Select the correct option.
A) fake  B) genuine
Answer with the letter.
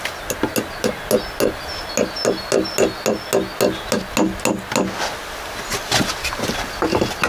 B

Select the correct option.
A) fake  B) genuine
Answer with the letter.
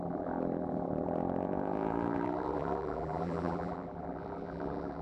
A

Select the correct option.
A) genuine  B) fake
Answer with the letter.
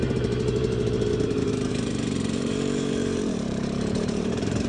B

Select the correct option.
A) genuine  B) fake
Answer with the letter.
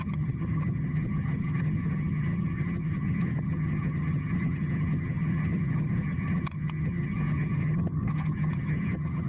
B